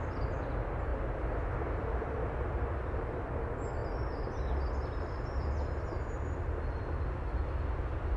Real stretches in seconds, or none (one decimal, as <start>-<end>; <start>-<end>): 0.0-8.2

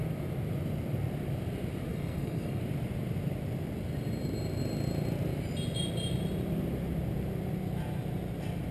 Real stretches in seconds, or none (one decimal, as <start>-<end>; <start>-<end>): 0.0-1.9; 2.6-8.7

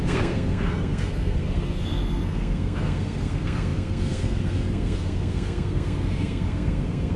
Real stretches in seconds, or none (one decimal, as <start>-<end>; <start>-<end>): none

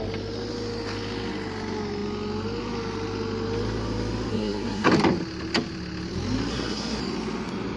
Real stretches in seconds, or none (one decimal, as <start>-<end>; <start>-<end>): 0.0-4.3; 4.9-6.5; 7.0-7.8

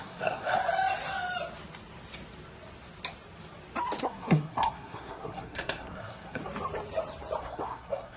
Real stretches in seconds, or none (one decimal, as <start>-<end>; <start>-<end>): 0.6-4.0; 6.4-7.4

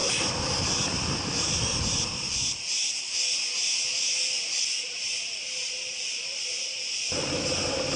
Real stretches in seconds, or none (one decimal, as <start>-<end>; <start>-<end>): 0.0-8.0

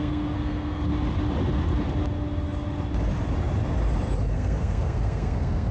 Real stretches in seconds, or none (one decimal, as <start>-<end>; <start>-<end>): 0.9-4.3

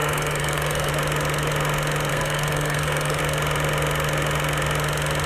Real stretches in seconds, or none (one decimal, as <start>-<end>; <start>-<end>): 0.9-2.1; 3.2-5.3